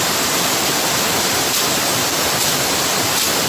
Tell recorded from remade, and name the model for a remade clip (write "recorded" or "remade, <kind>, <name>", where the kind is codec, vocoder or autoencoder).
recorded